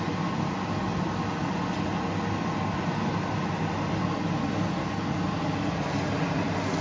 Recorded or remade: recorded